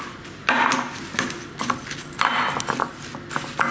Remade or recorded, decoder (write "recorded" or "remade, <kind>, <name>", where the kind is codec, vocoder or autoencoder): recorded